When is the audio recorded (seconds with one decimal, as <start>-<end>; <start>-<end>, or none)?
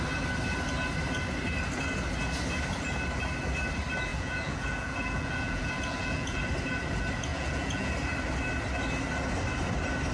0.0-4.1; 6.4-7.3; 7.9-10.1